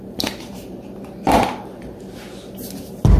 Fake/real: fake